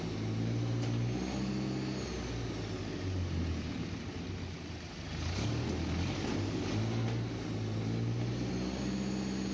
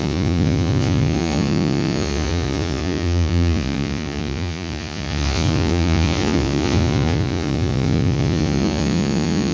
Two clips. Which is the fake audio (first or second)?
second